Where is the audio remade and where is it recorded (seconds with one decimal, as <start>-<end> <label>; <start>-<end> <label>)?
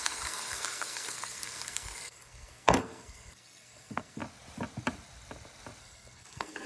0.0-4.2 remade; 4.2-5.8 recorded; 5.8-6.7 remade